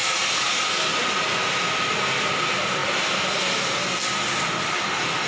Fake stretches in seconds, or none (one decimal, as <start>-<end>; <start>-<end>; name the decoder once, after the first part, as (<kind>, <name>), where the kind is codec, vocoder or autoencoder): none